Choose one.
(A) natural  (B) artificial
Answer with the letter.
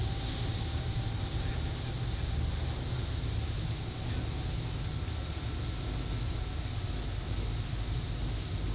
A